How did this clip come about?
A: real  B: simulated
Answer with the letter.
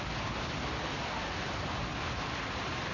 A